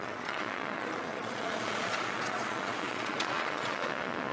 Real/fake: fake